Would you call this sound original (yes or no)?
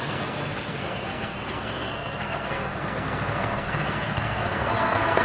no